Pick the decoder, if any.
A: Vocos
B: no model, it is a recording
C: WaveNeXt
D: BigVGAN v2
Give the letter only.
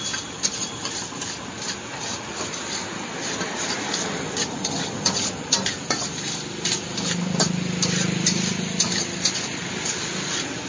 D